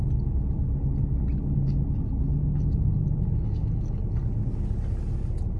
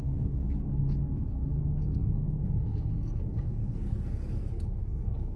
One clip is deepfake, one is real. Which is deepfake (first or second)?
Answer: second